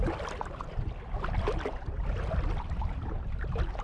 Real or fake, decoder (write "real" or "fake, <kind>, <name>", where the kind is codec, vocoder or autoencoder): real